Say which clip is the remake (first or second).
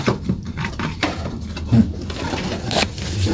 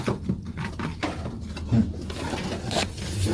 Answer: first